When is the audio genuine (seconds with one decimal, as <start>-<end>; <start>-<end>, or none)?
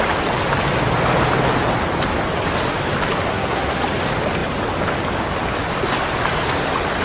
0.0-3.3; 3.8-7.0